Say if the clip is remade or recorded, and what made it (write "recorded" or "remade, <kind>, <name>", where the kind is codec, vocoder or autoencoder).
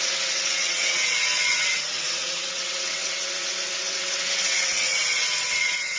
remade, vocoder, WaveNeXt